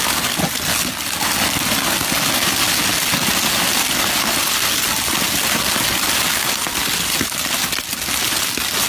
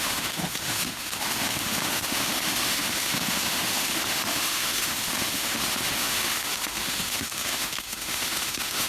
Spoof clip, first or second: second